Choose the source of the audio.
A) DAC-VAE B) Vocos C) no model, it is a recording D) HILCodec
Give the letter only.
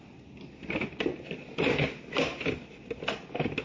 C